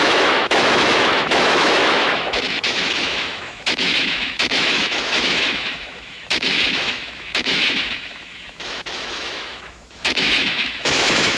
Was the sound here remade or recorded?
remade